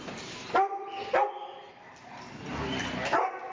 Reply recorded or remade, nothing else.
recorded